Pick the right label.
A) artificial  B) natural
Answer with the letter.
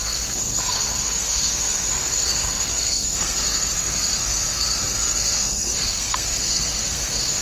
A